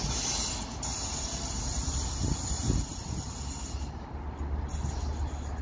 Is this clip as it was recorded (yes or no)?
yes